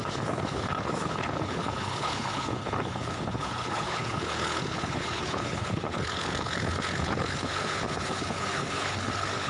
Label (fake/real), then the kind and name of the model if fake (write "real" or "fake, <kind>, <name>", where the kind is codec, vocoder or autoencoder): fake, codec, HILCodec